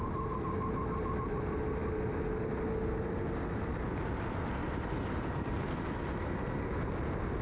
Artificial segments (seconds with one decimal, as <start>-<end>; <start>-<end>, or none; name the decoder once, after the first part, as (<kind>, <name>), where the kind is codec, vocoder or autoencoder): 4.6-6.0 (vocoder, BigVGAN v2)